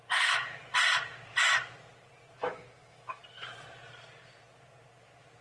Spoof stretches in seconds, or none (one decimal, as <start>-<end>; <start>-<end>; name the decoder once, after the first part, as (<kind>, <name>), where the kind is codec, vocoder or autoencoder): 2.4-3.2 (autoencoder, DAC-VAE)